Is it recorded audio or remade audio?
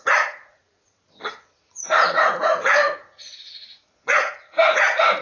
remade